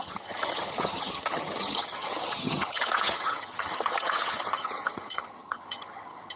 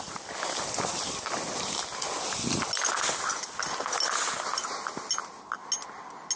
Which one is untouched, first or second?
second